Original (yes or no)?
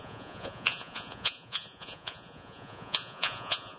no